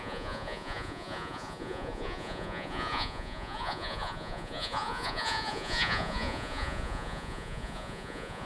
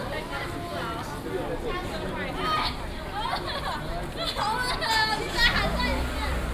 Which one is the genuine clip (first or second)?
second